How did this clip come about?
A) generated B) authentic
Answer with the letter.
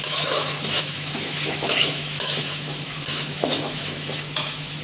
A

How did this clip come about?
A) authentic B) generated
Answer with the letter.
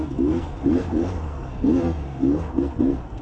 B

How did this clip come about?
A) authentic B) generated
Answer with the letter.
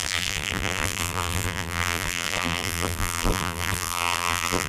B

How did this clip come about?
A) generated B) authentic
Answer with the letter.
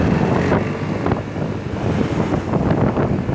B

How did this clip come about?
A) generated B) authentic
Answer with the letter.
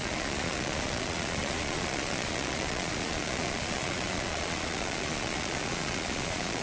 A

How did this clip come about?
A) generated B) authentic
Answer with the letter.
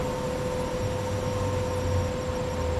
B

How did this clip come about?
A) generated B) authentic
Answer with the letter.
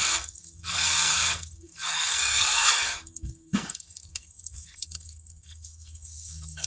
A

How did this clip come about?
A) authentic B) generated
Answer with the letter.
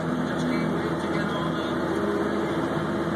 A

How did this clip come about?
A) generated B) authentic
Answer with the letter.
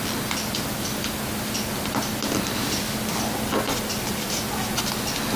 B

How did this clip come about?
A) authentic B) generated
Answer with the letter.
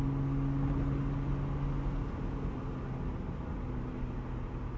A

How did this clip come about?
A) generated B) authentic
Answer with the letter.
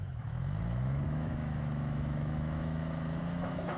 A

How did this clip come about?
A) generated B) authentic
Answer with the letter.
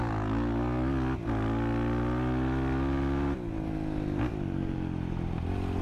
B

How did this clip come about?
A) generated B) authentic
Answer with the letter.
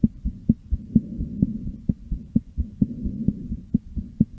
A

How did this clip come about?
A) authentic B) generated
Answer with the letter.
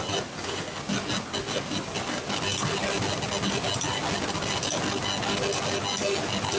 A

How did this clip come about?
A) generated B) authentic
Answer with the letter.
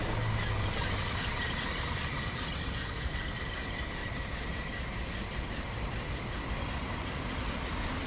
B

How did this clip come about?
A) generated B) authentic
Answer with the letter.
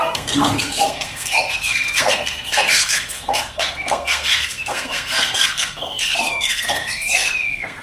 A